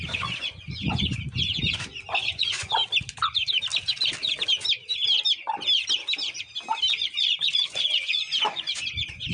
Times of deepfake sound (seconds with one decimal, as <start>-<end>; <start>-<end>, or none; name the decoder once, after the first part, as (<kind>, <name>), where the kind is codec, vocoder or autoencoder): 0.0-2.8 (vocoder, Vocos); 6.9-9.3